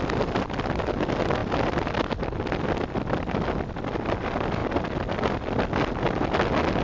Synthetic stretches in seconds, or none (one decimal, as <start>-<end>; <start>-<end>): none